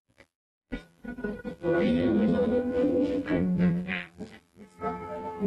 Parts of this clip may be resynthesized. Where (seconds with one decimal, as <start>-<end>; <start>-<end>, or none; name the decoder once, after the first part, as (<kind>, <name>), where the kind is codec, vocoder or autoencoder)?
0.0-1.0 (vocoder, BigVGAN v2); 1.5-5.5